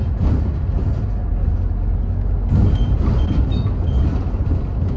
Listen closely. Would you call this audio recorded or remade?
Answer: recorded